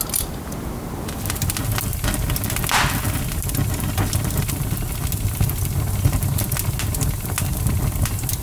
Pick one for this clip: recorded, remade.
recorded